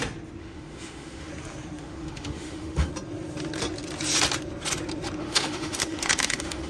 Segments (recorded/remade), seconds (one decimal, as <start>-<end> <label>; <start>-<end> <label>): 0.0-0.4 recorded; 0.4-1.3 remade; 1.3-1.8 recorded; 1.8-2.9 remade; 2.9-5.2 recorded; 5.2-6.7 remade